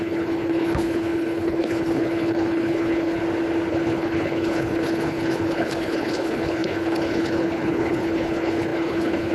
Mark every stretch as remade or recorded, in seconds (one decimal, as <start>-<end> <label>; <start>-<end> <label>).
0.0-3.2 remade; 3.2-3.7 recorded; 3.7-9.3 remade